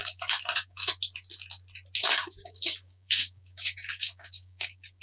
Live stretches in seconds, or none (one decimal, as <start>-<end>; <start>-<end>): 0.9-2.0